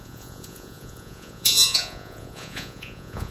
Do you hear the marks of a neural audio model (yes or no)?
yes